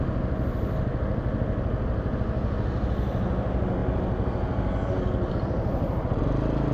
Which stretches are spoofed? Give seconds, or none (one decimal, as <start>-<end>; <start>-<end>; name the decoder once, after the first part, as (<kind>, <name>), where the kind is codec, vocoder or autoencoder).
none